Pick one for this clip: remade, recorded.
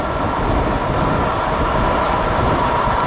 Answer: recorded